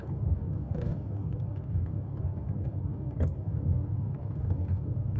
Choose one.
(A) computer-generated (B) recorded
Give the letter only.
A